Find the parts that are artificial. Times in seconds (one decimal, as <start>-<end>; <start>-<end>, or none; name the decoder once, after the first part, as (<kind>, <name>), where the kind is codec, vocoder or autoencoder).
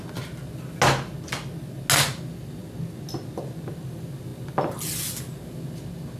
none